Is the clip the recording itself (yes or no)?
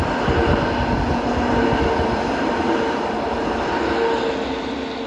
yes